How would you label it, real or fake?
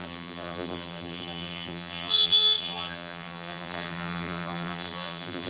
fake